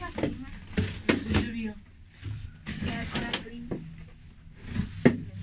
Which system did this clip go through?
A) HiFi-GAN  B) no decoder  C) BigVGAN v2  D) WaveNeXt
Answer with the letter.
B